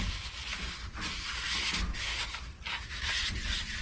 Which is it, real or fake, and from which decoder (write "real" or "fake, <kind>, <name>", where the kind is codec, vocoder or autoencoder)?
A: real